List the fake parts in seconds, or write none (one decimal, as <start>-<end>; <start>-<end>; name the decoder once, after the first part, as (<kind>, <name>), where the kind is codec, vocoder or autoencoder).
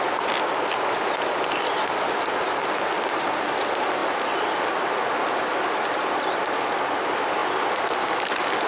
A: none